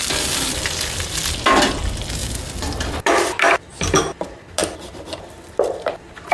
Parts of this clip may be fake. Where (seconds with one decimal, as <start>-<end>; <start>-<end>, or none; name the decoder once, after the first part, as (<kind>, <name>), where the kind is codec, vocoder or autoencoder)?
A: 4.6-5.2 (vocoder, BigVGAN v2)